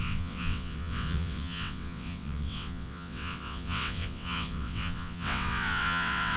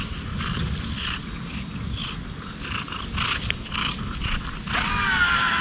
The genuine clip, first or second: second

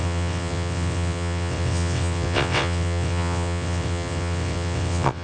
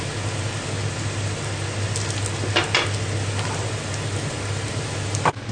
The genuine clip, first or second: second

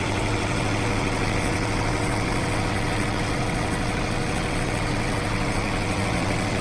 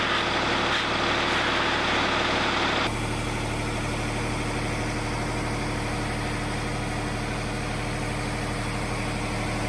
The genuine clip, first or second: second